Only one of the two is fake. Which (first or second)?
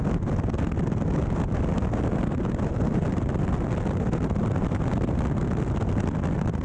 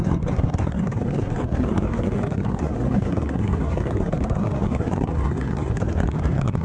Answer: second